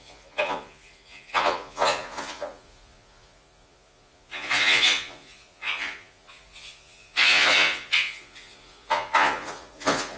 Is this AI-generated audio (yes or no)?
yes